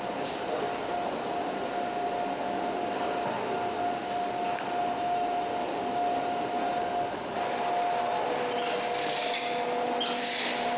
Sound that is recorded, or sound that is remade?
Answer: recorded